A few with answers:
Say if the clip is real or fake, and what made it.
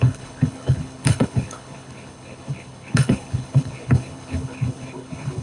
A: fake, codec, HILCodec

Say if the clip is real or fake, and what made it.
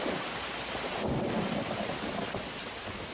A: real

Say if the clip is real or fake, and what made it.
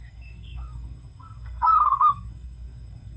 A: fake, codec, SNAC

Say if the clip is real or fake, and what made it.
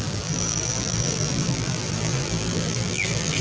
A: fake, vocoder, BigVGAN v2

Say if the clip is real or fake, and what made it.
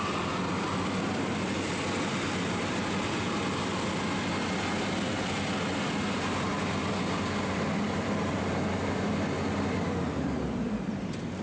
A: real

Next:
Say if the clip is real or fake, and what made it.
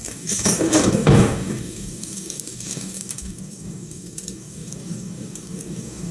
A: fake, codec, DAC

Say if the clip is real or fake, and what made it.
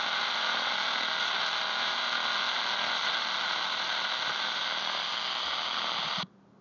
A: real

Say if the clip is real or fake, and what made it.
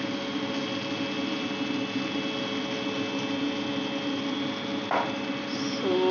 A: real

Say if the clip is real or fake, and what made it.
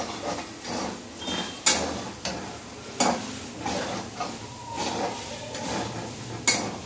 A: real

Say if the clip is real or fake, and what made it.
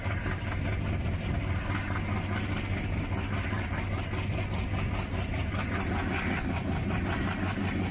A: real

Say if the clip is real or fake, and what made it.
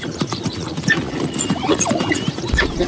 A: fake, vocoder, Vocos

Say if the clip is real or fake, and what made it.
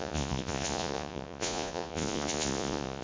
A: fake, vocoder, Vocos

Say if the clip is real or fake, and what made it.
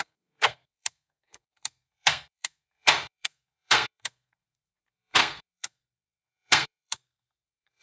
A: fake, codec, SNAC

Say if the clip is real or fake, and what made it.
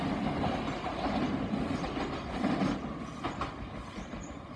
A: real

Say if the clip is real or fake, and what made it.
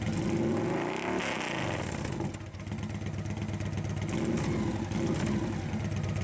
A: real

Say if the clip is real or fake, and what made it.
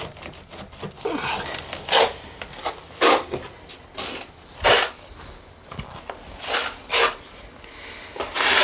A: real